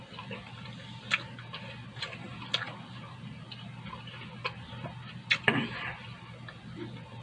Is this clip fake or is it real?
real